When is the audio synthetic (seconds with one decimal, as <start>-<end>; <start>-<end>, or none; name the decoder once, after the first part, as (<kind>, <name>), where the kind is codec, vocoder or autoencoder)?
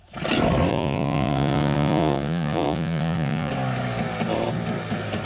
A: 0.7-3.5 (vocoder, Vocos)